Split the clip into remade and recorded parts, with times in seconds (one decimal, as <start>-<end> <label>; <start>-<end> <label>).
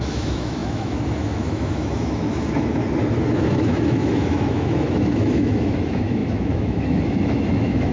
0.0-2.8 remade; 2.8-3.3 recorded; 3.3-7.9 remade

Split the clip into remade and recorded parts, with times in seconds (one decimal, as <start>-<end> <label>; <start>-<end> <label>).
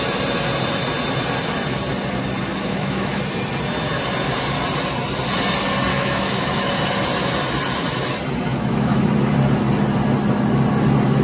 0.0-2.5 recorded; 2.5-3.2 remade; 3.2-5.9 recorded; 5.9-6.7 remade; 6.7-8.5 recorded; 8.5-9.1 remade; 9.1-11.2 recorded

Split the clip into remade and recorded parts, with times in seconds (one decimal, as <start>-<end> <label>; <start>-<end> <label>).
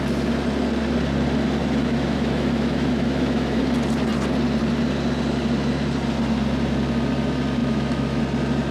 0.0-1.6 recorded; 1.6-3.6 remade; 3.6-7.6 recorded; 7.6-8.2 remade; 8.2-8.7 recorded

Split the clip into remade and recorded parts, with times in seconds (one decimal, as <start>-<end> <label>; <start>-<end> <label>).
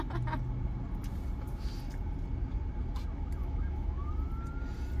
0.0-3.4 recorded; 3.4-4.1 remade; 4.1-5.0 recorded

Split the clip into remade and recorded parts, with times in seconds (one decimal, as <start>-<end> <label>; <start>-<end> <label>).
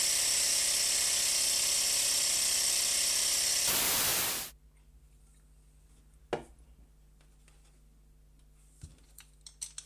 0.0-9.9 recorded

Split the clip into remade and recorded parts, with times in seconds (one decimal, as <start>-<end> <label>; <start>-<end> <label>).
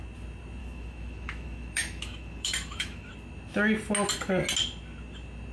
0.0-0.6 recorded; 0.6-3.1 remade; 3.1-5.5 recorded